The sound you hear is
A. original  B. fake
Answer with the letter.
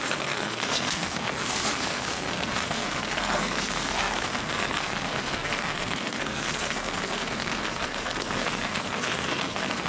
B